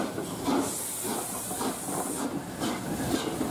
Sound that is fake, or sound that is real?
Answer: real